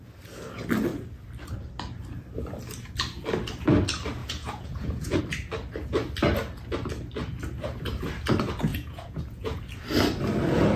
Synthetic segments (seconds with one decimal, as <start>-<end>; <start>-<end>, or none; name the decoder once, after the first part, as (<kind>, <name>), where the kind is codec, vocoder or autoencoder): 4.2-5.2 (vocoder, Vocos); 8.7-9.6